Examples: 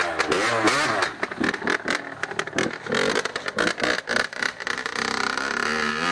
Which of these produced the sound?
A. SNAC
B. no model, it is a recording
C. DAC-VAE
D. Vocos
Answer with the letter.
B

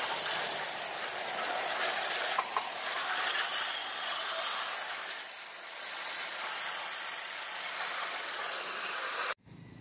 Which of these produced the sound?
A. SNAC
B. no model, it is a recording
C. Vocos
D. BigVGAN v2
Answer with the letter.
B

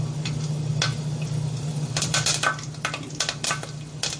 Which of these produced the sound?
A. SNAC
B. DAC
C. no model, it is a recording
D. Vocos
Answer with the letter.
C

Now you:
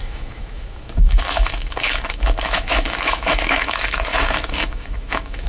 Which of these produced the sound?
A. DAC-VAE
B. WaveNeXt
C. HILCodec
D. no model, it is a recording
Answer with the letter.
A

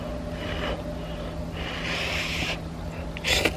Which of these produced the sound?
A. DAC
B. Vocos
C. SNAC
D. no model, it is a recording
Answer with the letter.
D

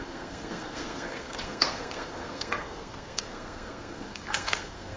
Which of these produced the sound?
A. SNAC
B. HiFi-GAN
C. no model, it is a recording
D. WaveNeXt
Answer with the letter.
A